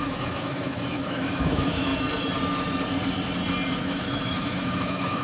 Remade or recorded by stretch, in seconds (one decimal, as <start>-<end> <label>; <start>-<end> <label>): 0.0-1.9 remade; 1.9-3.8 recorded; 3.8-5.2 remade